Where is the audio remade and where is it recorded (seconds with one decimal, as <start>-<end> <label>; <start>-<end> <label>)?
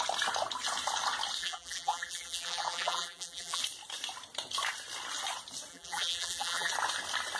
0.0-1.4 recorded; 1.4-3.6 remade; 3.6-5.7 recorded; 5.7-6.7 remade; 6.7-7.4 recorded